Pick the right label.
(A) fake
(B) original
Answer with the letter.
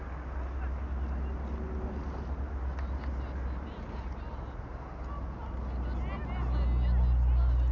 B